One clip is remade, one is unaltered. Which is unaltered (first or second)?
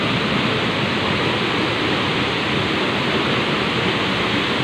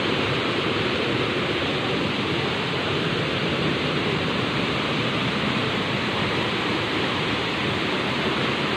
first